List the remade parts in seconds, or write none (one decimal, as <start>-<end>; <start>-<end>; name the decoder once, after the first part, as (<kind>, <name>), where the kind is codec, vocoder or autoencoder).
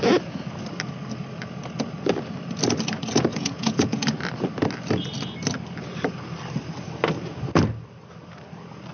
3.3-4.0 (vocoder, Vocos)